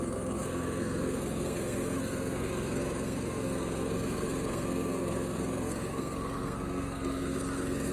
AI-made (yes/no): yes